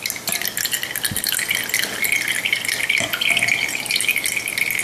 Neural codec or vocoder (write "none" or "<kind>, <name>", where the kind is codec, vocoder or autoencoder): none